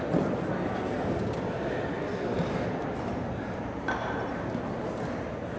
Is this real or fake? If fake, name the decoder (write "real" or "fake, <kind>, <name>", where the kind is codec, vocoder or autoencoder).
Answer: real